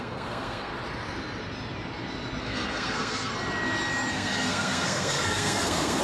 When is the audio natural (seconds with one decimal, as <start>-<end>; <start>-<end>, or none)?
0.7-2.4; 3.3-4.1